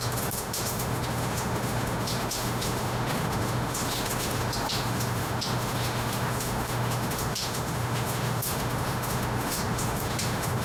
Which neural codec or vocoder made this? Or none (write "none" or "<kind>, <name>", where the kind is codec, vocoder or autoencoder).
autoencoder, DAC-VAE